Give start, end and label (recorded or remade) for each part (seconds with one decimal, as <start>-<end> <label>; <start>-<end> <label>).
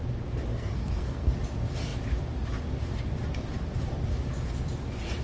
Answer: 0.0-0.5 recorded; 0.5-1.3 remade; 1.3-5.2 recorded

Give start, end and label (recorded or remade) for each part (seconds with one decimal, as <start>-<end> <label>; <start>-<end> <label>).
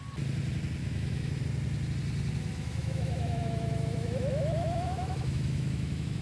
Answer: 0.0-0.8 recorded; 0.8-1.4 remade; 1.4-2.5 recorded; 2.5-6.2 remade